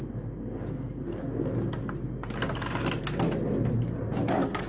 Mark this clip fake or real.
real